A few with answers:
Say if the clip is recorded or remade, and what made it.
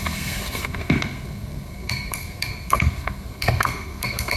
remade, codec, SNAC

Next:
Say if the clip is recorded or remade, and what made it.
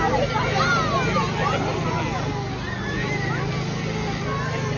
recorded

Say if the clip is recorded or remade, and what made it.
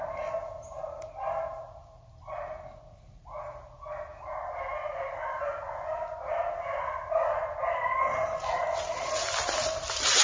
recorded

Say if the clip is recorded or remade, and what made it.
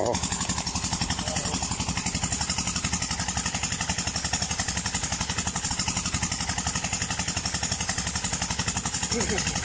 recorded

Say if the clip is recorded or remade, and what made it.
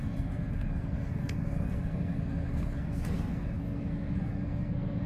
remade, codec, SNAC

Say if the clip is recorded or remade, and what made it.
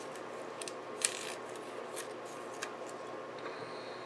recorded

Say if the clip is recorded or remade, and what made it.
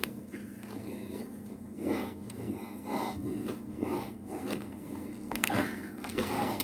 remade, codec, SNAC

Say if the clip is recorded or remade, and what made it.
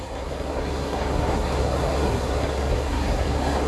remade, codec, SNAC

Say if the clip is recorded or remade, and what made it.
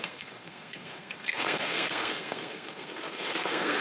remade, codec, SNAC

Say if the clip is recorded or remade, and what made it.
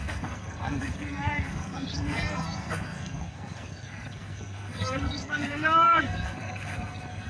remade, codec, SNAC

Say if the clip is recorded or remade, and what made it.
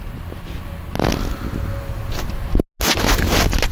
recorded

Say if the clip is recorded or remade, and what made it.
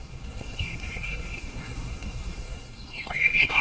remade, codec, SNAC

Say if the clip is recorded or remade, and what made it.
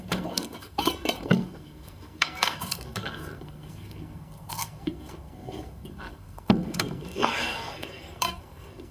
remade, codec, SNAC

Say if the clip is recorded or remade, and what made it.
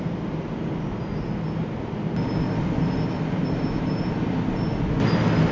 recorded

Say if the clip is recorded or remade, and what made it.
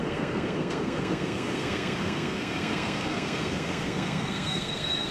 remade, codec, SNAC